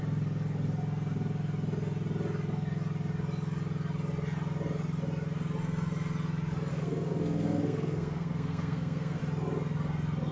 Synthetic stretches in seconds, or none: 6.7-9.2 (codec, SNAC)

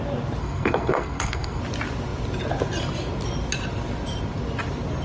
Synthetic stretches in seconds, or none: 0.4-1.6 (codec, SNAC)

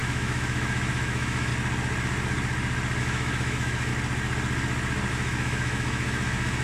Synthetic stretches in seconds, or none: 0.0-1.5 (autoencoder, DAC-VAE); 3.0-3.9; 5.1-6.6

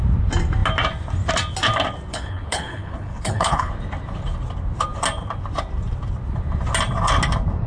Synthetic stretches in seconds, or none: 2.1-3.7 (codec, HILCodec)

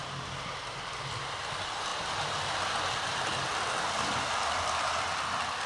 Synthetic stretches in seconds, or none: none

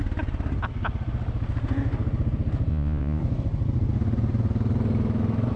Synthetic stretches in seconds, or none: 2.7-3.2 (vocoder, Vocos)

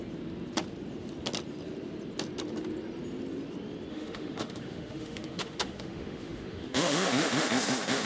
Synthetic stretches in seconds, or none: 3.9-8.1 (autoencoder, DAC-VAE)